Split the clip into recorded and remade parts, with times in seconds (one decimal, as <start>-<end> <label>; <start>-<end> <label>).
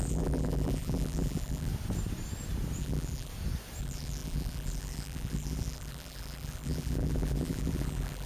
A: 0.0-1.7 remade; 1.7-2.8 recorded; 2.8-3.3 remade; 3.3-3.8 recorded; 3.8-8.3 remade